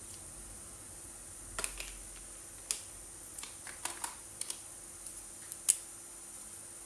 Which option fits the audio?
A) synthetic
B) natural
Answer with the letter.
B